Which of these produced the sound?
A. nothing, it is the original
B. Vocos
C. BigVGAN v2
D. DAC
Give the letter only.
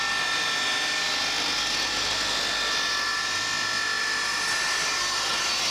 A